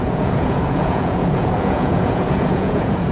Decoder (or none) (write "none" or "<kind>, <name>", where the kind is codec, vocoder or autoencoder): vocoder, Vocos